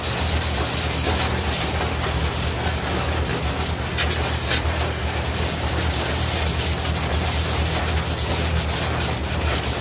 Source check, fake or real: real